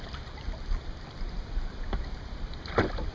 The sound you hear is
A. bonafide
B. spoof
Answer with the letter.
A